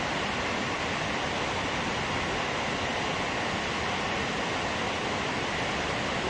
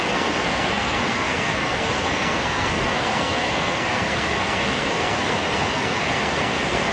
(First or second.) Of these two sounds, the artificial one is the second